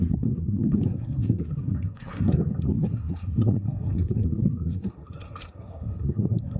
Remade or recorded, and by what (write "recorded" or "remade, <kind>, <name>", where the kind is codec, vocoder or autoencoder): remade, codec, SNAC